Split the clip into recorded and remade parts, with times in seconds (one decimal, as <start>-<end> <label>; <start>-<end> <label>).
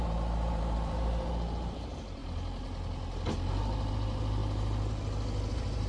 0.0-2.2 remade; 2.2-3.9 recorded; 3.9-4.4 remade; 4.4-5.5 recorded; 5.5-5.9 remade